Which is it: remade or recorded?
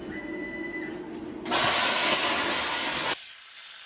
recorded